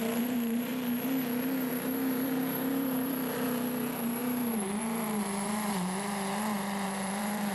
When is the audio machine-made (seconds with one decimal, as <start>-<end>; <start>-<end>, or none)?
0.0-0.7; 1.7-7.5